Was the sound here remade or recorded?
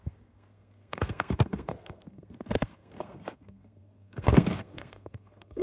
remade